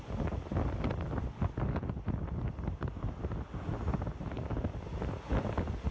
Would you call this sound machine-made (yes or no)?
no